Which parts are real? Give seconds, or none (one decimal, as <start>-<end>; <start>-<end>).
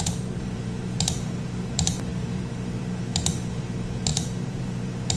none